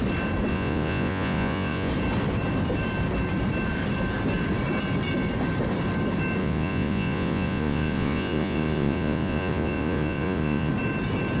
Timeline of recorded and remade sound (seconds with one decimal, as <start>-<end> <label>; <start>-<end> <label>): 0.0-0.5 recorded; 0.5-1.9 remade; 1.9-6.4 recorded; 6.4-10.7 remade; 10.7-11.4 recorded